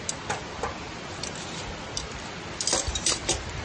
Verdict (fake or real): real